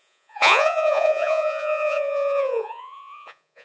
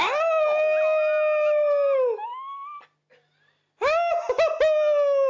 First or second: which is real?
second